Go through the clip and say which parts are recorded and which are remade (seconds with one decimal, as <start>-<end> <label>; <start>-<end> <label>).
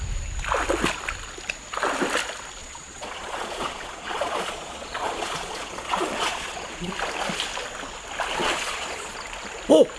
0.0-2.6 recorded; 2.6-6.9 remade; 6.9-8.4 recorded; 8.4-9.1 remade; 9.1-10.0 recorded